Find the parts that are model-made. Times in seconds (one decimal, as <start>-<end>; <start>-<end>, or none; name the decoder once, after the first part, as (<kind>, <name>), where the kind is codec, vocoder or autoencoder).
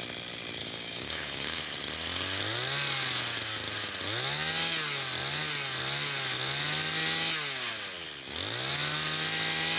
0.6-1.6 (codec, DAC)